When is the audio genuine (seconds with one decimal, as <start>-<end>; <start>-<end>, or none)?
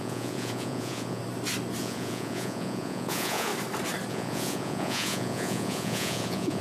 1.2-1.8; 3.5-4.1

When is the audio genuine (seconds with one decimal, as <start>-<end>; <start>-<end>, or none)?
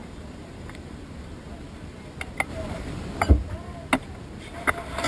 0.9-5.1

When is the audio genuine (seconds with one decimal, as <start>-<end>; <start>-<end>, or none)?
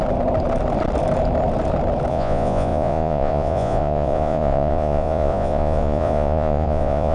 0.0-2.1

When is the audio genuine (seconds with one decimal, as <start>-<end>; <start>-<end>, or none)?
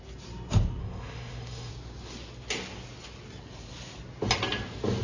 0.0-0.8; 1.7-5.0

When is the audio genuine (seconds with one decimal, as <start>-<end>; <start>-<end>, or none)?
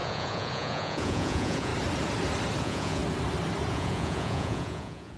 1.7-2.6; 3.0-3.7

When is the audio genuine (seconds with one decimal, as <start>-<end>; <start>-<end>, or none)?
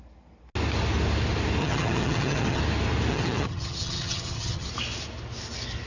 0.0-1.6; 2.6-3.1; 4.7-5.9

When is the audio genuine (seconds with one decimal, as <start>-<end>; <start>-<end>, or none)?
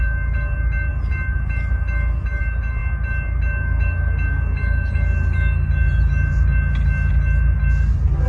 0.0-8.3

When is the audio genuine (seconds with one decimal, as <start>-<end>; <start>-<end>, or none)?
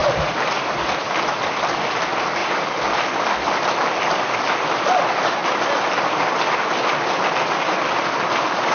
1.0-2.4; 4.3-8.7